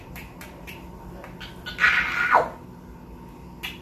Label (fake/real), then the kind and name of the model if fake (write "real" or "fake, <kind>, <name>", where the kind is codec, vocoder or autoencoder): real